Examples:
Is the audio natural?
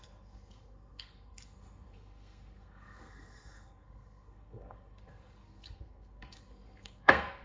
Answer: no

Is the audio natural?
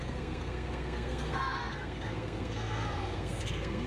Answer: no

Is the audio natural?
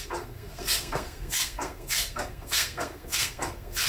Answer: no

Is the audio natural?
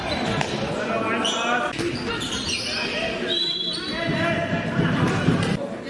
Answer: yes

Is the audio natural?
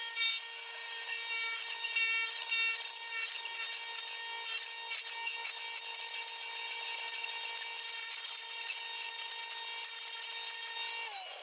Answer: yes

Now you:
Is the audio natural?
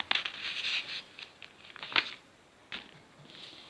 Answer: yes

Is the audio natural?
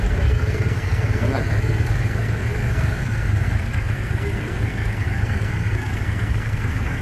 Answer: no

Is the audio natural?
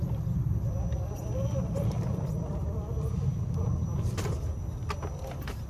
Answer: yes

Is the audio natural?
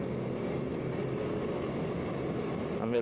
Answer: yes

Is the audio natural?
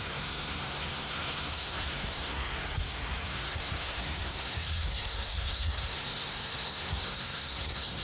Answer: no